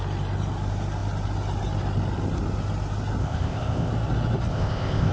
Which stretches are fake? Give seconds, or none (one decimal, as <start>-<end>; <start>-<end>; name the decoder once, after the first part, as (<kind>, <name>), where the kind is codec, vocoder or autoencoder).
3.2-3.9 (codec, ZipCodec); 4.5-5.1